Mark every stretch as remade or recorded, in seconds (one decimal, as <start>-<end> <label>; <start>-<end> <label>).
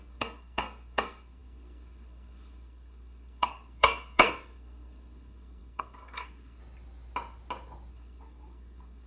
0.0-6.6 remade; 6.6-7.9 recorded; 7.9-9.1 remade